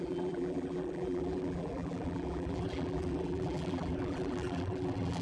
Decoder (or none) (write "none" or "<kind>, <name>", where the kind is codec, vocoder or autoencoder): vocoder, BigVGAN v2